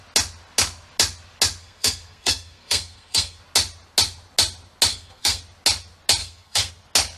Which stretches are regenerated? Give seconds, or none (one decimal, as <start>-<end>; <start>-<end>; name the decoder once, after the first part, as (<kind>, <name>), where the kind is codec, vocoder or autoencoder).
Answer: 1.6-3.4 (codec, SNAC); 4.9-5.4; 6.2-6.7

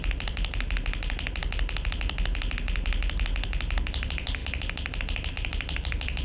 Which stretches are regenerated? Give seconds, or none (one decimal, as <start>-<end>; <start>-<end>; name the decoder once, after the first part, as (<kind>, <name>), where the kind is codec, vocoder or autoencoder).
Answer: none

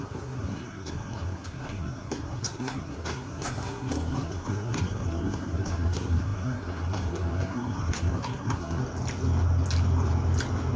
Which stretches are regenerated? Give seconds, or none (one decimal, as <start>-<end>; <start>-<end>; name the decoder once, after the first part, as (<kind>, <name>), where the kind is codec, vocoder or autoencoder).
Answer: 0.0-8.8 (codec, SNAC)

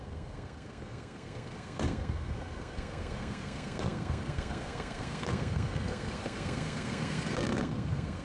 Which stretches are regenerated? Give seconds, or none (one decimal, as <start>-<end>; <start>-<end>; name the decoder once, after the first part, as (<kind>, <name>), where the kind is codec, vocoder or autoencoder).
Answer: 0.0-8.2 (codec, SNAC)